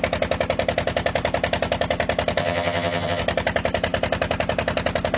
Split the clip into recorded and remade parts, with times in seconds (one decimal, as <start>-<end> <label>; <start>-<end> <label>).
0.0-2.4 recorded; 2.4-3.2 remade; 3.2-5.2 recorded